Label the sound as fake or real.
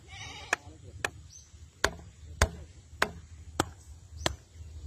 real